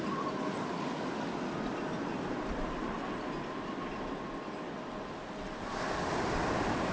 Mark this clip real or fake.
real